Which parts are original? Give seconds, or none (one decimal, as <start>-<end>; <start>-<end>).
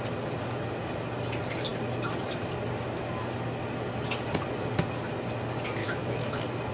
0.0-5.8; 6.3-6.7